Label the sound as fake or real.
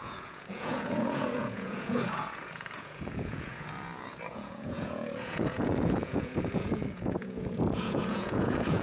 fake